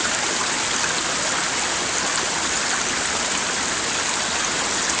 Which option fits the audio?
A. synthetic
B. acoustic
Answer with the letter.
B